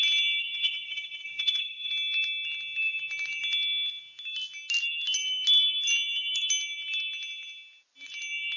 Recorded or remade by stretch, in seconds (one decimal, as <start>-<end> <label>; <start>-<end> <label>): 0.0-0.4 recorded; 0.4-1.9 remade; 1.9-8.6 recorded